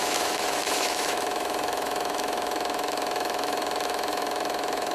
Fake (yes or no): yes